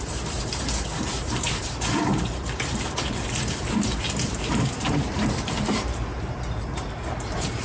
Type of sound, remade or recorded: remade